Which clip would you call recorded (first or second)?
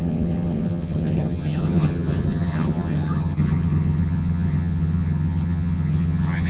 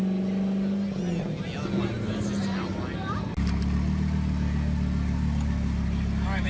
second